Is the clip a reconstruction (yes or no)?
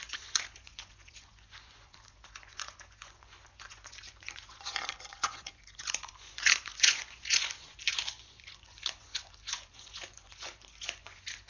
yes